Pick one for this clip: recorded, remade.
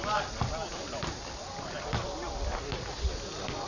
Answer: recorded